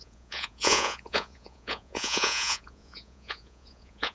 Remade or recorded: remade